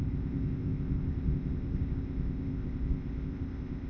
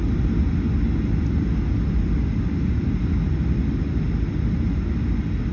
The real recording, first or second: second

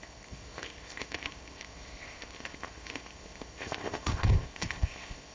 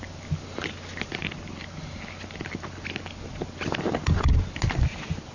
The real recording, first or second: second